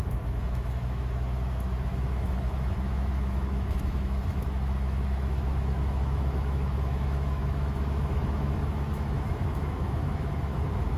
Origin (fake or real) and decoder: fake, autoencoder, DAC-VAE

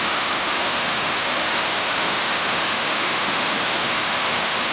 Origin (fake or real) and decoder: fake, autoencoder, DAC-VAE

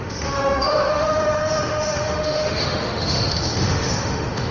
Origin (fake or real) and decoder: fake, autoencoder, DAC-VAE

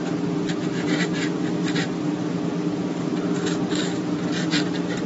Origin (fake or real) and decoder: real